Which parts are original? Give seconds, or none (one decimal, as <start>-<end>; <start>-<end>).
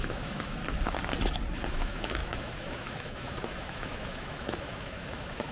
0.6-1.7